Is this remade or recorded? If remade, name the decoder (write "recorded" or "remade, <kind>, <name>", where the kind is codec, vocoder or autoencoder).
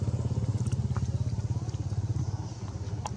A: recorded